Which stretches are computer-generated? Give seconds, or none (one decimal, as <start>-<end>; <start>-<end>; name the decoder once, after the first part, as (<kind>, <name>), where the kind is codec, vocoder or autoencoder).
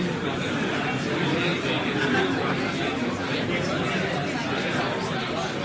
none